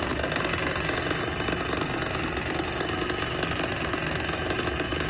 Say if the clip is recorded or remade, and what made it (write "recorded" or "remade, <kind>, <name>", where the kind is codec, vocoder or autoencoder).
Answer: recorded